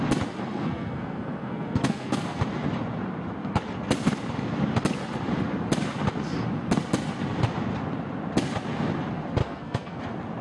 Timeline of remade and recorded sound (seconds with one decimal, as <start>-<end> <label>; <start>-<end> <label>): 0.0-0.4 recorded; 0.4-2.4 remade; 2.4-9.4 recorded; 9.4-10.0 remade; 10.0-10.4 recorded